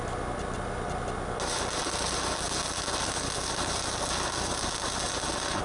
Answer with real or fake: real